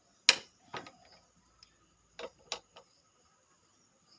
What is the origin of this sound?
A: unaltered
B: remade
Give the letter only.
A